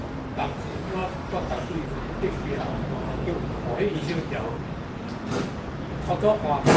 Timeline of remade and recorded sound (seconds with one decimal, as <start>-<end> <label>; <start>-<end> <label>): 0.0-1.0 recorded; 1.0-3.2 remade; 3.2-3.9 recorded; 3.9-5.6 remade; 5.6-6.8 recorded